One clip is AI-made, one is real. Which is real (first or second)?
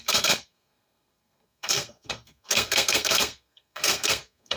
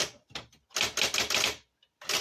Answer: second